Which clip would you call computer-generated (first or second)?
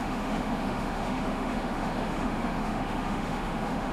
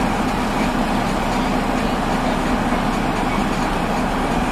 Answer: first